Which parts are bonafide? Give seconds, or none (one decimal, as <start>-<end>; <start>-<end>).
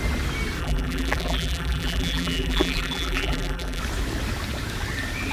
0.0-0.6; 3.8-5.3